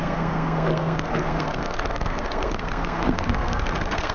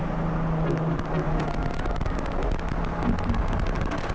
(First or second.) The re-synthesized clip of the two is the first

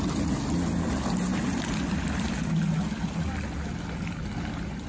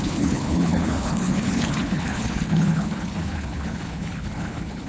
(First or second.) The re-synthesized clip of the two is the second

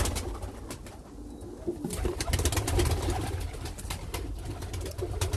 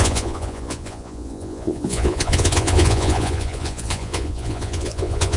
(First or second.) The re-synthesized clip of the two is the second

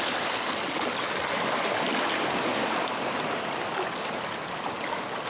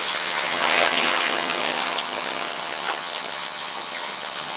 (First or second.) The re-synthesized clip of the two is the second